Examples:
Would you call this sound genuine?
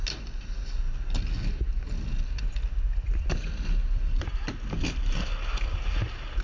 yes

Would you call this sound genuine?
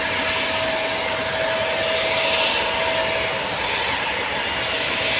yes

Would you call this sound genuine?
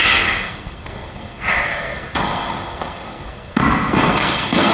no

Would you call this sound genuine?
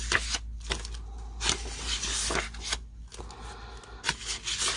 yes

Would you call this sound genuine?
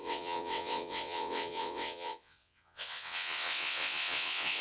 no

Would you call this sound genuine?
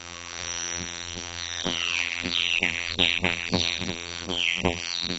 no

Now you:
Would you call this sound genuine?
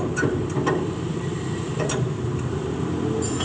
no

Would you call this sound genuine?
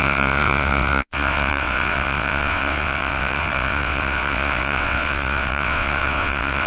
no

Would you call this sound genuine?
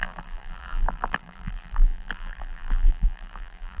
no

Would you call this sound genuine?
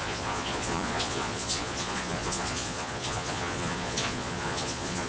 no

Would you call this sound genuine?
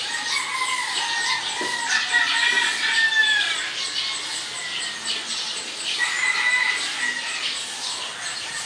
yes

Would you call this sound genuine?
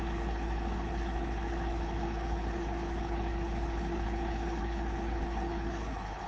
no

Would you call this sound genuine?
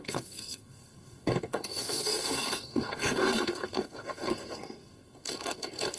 no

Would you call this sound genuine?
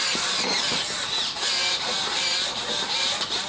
yes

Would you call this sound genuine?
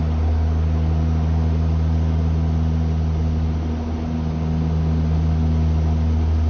yes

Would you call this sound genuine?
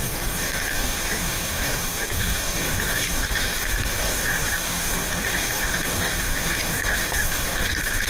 no